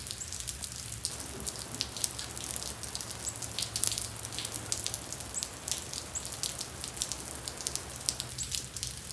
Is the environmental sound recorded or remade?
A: recorded